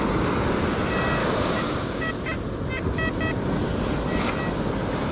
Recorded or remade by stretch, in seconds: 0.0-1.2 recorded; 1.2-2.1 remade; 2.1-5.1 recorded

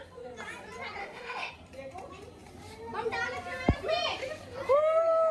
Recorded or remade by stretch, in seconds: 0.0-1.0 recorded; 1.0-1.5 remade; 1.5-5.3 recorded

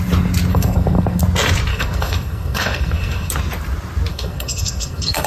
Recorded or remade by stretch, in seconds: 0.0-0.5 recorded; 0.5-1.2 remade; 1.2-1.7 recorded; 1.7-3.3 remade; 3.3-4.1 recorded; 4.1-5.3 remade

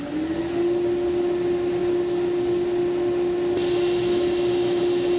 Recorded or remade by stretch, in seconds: 0.0-5.2 recorded

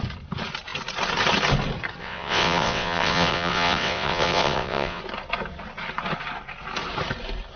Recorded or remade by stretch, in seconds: 0.0-2.0 recorded; 2.0-5.0 remade; 5.0-7.6 recorded

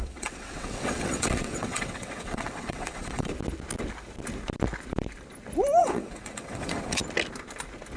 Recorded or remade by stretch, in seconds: 0.0-3.3 remade; 3.3-5.8 recorded; 5.8-7.0 remade; 7.0-8.0 recorded

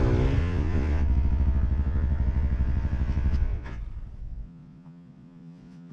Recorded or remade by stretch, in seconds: 0.0-0.4 recorded; 0.4-3.8 remade; 3.8-4.2 recorded; 4.2-5.9 remade

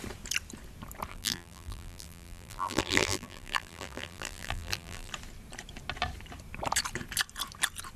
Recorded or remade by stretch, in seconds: 0.0-1.1 recorded; 1.1-5.1 remade; 5.1-8.0 recorded